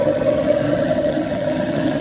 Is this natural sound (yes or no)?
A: no